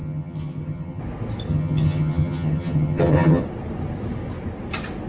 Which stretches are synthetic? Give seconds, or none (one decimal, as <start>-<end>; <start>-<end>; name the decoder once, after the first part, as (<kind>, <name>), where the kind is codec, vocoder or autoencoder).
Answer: 0.0-1.0 (vocoder, HiFi-GAN); 1.5-3.4